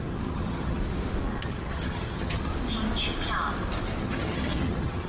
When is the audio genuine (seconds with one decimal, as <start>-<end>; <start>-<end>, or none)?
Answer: 0.8-1.4; 2.5-4.0